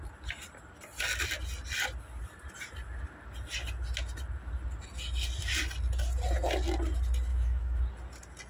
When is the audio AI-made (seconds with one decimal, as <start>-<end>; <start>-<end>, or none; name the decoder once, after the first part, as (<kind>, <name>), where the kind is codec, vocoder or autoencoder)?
7.3-7.8 (autoencoder, DAC-VAE)